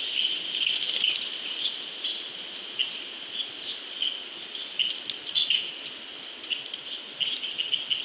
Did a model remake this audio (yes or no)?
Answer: no